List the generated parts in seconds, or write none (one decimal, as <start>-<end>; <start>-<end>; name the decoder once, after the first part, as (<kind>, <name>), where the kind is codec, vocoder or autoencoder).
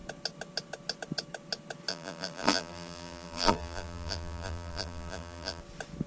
1.9-5.6 (vocoder, BigVGAN v2)